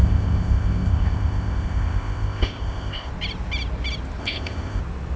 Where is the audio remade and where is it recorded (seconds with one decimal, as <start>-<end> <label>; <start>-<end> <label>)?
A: 0.0-3.1 remade; 3.1-4.2 recorded; 4.2-4.8 remade; 4.8-5.2 recorded